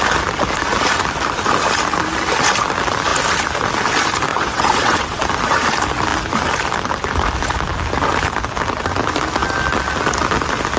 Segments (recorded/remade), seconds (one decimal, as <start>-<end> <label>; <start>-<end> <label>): 0.0-4.3 recorded; 4.3-5.2 remade; 5.2-10.8 recorded